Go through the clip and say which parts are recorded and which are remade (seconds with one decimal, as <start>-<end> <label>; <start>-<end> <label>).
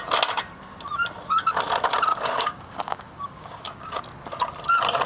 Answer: 0.0-2.1 recorded; 2.1-4.0 remade; 4.0-5.1 recorded